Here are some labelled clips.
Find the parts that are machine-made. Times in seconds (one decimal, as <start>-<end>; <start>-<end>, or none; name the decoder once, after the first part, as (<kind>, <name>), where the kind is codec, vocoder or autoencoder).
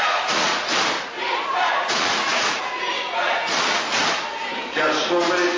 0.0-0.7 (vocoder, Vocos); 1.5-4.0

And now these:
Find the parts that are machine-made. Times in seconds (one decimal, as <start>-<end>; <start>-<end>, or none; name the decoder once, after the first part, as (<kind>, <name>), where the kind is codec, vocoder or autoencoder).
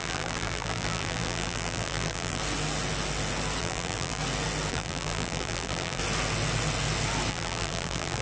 0.0-2.4 (vocoder, BigVGAN v2); 3.6-4.2; 4.7-6.0; 7.3-8.2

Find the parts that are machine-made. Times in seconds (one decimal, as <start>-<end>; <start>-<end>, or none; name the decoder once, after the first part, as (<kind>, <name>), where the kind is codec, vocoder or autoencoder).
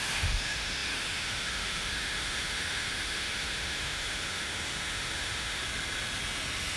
0.0-5.6 (autoencoder, DAC-VAE)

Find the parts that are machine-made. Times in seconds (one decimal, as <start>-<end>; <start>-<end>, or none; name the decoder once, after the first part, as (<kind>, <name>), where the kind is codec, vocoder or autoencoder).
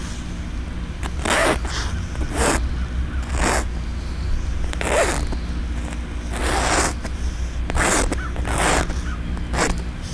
none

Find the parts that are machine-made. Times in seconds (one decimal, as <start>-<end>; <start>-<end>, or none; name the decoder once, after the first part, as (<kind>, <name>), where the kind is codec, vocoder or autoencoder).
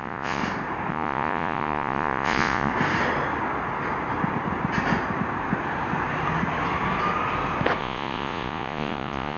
0.0-0.4 (vocoder, Vocos); 0.9-2.7; 7.8-9.4